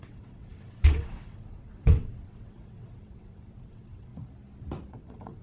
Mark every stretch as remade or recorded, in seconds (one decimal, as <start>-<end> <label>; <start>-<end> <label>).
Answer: 0.0-4.1 remade; 4.1-4.9 recorded; 4.9-5.4 remade